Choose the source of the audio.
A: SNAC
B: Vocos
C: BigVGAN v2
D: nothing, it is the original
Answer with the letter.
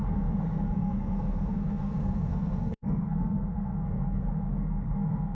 A